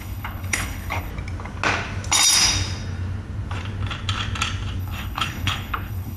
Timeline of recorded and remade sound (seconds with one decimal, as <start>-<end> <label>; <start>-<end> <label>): 0.0-1.1 remade; 1.1-4.8 recorded; 4.8-6.2 remade